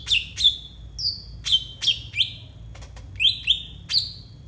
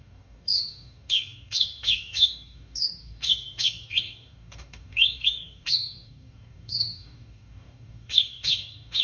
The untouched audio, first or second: first